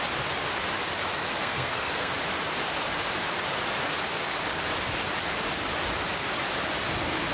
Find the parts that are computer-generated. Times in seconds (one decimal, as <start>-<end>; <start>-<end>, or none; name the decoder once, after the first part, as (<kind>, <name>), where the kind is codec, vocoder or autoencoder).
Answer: 1.4-2.1 (codec, SNAC)